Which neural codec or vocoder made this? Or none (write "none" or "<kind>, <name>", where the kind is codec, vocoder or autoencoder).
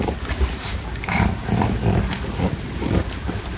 none